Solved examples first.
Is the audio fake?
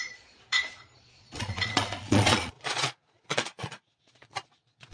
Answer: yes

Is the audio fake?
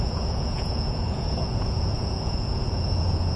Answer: yes